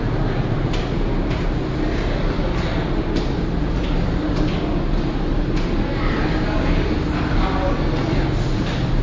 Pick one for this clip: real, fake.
real